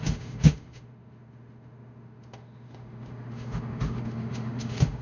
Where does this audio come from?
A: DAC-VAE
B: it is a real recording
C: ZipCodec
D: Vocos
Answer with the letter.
A